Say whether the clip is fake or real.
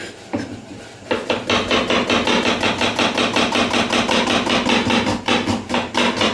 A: real